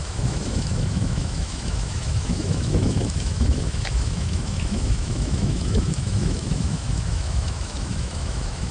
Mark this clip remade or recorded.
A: remade